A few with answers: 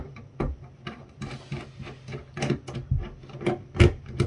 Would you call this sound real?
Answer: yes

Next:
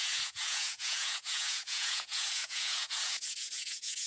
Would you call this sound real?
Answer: no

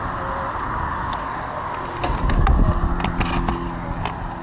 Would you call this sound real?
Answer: yes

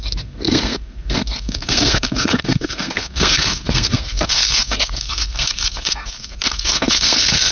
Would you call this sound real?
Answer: no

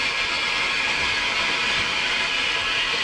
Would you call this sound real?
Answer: yes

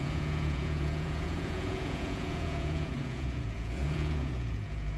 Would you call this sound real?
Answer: no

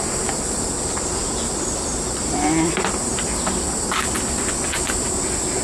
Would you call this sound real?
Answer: yes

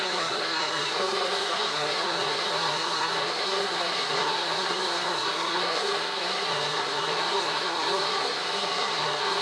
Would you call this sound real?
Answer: no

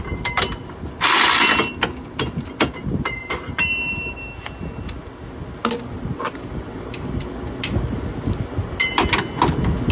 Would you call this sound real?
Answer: yes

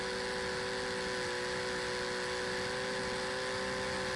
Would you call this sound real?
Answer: yes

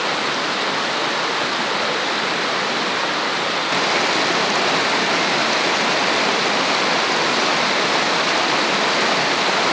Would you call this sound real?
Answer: yes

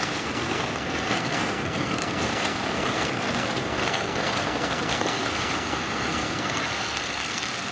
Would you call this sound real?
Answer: no